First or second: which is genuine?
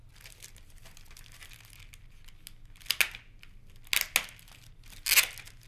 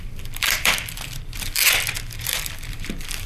first